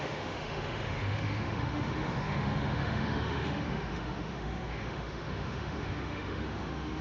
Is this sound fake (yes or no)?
yes